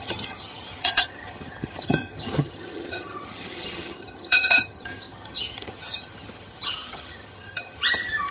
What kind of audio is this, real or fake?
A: fake